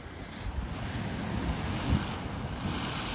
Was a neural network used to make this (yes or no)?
no